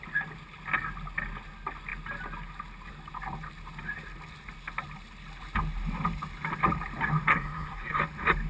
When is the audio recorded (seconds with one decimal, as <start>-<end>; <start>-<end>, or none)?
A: 0.0-7.3; 8.0-8.5